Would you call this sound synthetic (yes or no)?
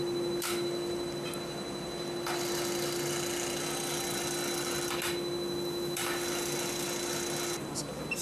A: no